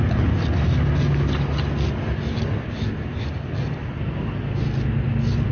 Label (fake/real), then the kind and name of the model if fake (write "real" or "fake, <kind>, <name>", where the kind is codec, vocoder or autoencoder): real